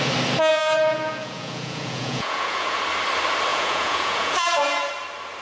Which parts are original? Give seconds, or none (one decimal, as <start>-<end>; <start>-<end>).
0.0-0.5; 2.8-3.5; 4.9-5.4